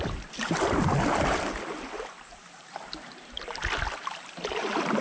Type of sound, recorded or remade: recorded